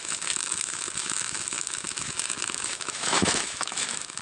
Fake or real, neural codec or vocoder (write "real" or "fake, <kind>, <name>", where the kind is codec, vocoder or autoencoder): fake, autoencoder, DAC-VAE